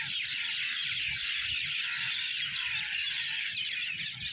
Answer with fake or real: real